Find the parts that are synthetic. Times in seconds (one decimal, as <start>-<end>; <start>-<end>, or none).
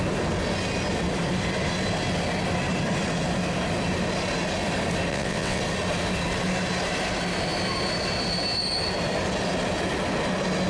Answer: 5.1-5.6